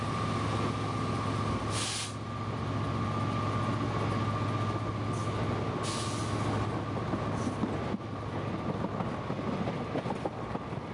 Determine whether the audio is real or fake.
real